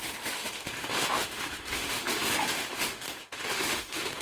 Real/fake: fake